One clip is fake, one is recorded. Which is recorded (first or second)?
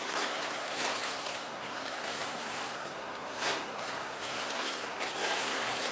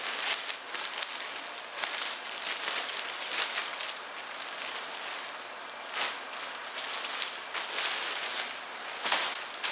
second